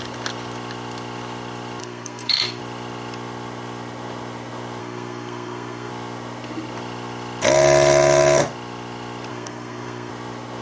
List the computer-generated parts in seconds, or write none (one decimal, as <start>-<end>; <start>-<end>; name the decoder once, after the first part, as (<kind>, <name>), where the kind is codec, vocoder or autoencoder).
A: 1.8-2.6 (codec, SNAC); 4.8-5.9; 9.3-10.1